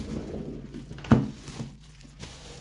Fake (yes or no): yes